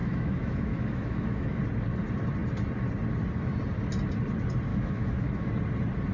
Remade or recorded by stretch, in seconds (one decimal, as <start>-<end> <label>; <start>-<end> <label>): 0.0-1.6 remade; 1.6-4.7 recorded; 4.7-5.5 remade; 5.5-6.1 recorded